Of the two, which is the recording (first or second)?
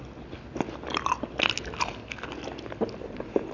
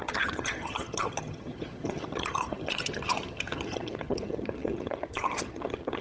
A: first